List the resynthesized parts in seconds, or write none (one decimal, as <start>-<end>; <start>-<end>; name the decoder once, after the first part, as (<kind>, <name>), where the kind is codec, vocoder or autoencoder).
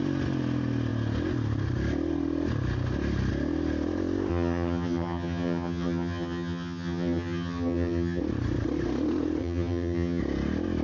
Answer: 4.3-8.2 (vocoder, HiFi-GAN); 9.4-10.2